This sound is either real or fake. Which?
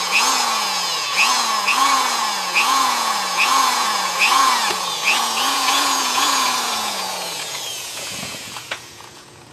fake